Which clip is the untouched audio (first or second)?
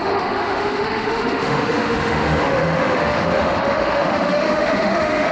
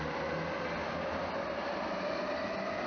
second